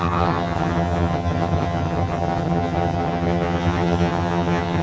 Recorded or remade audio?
remade